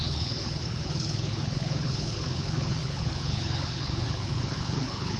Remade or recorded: remade